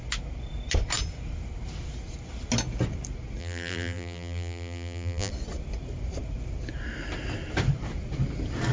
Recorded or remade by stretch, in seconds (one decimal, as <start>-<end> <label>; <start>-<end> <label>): 0.0-3.4 recorded; 3.4-5.3 remade; 5.3-8.7 recorded